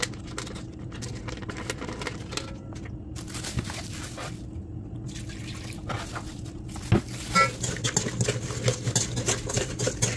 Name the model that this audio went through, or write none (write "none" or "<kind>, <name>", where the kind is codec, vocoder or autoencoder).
none